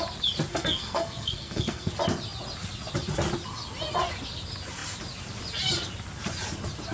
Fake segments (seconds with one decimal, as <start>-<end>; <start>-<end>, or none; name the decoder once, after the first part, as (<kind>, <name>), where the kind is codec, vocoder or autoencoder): 0.5-1.9 (codec, SNAC)